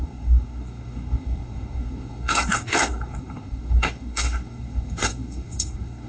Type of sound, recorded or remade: remade